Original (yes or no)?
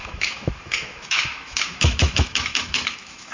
no